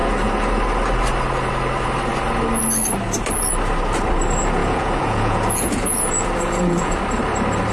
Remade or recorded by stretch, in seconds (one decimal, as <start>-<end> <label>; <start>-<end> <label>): 0.0-4.6 recorded; 4.6-7.0 remade; 7.0-7.7 recorded